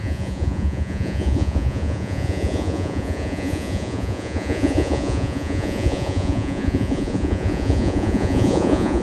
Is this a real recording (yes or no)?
no